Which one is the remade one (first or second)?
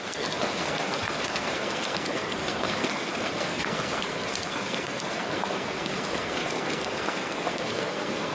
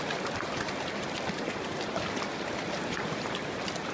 first